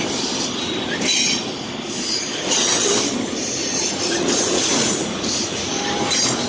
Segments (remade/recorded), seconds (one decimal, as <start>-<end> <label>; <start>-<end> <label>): 0.0-3.6 recorded; 3.6-5.8 remade; 5.8-6.5 recorded